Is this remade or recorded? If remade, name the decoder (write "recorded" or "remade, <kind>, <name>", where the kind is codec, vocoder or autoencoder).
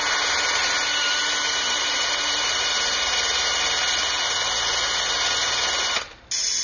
recorded